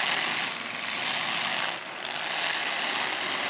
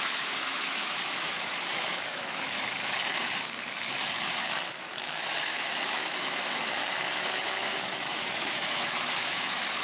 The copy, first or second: second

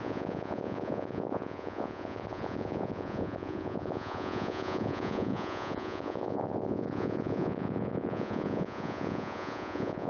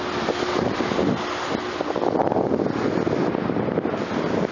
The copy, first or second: first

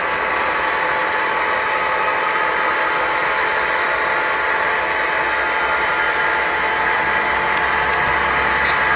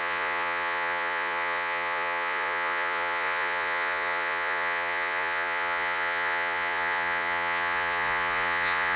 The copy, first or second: second